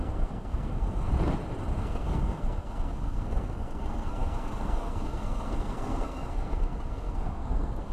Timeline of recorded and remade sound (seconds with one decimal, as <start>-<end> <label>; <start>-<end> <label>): 0.0-1.1 remade; 1.1-1.8 recorded; 1.8-7.9 remade